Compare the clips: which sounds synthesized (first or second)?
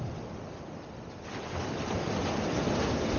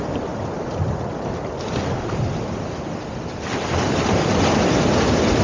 second